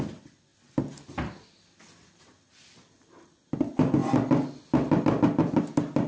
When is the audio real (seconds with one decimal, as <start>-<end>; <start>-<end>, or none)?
0.0-6.1